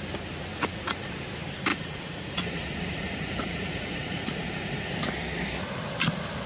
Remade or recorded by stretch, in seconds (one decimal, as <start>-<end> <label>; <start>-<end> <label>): 0.0-0.5 recorded; 0.5-1.1 remade; 1.1-1.7 recorded; 1.7-4.9 remade; 4.9-6.5 recorded